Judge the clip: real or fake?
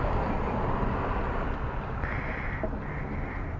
real